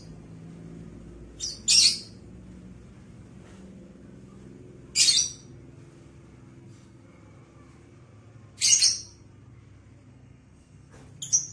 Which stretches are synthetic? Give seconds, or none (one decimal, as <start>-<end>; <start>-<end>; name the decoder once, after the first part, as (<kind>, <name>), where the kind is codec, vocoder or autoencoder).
10.1-10.9 (codec, SNAC)